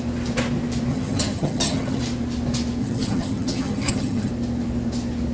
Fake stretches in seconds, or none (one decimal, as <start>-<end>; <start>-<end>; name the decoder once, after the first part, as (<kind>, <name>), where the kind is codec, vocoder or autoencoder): 0.9-2.0 (vocoder, HiFi-GAN); 2.8-4.3